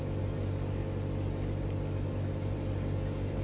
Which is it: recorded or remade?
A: recorded